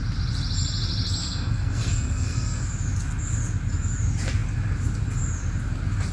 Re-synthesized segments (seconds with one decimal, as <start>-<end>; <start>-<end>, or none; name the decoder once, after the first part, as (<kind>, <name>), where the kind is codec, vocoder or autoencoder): 1.2-2.6 (codec, SNAC)